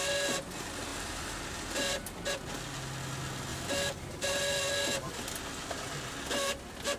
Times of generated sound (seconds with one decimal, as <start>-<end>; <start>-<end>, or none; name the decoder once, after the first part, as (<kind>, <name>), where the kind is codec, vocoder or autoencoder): 0.9-2.0 (vocoder, BigVGAN v2); 3.5-4.4